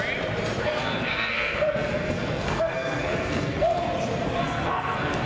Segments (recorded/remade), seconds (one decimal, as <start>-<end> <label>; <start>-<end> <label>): 0.0-0.6 recorded; 0.6-3.8 remade; 3.8-4.4 recorded; 4.4-5.3 remade